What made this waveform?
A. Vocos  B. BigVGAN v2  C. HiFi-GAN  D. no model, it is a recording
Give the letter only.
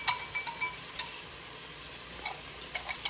D